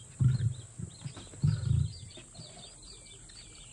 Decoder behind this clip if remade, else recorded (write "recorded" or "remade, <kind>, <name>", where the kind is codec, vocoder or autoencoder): recorded